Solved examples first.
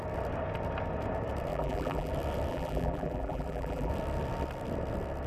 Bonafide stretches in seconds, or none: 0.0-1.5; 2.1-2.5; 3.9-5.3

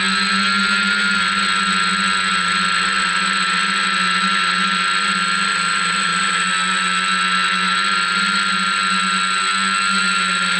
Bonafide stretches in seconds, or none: 0.0-10.6

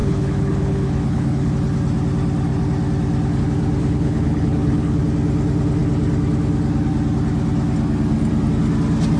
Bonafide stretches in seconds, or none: 1.5-3.8; 5.0-9.2